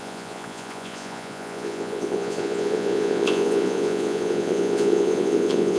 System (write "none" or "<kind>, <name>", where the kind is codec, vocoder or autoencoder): vocoder, Vocos